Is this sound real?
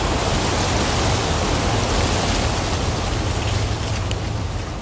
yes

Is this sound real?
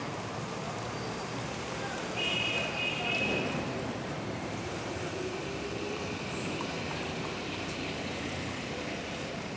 no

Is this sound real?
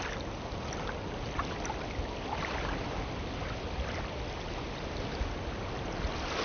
yes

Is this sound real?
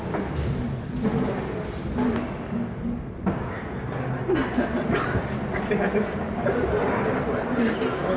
yes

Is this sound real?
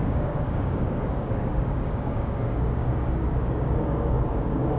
no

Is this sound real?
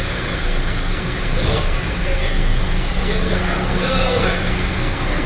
no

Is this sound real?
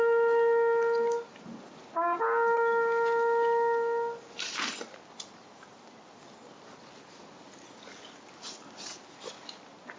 yes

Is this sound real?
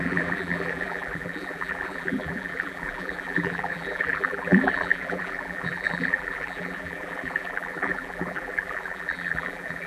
no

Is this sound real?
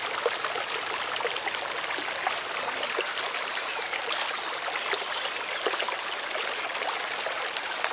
yes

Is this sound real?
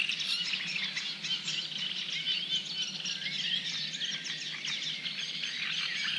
yes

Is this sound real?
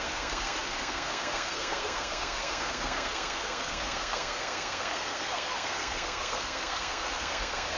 no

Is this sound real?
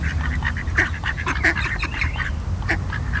no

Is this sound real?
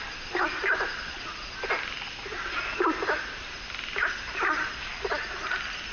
yes